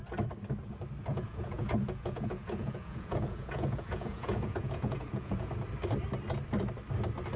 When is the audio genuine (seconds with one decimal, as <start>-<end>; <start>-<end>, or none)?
0.0-1.1; 5.5-7.4